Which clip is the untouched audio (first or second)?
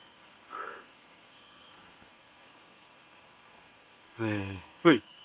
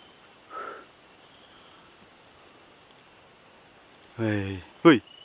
second